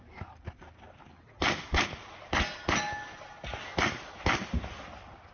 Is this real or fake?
real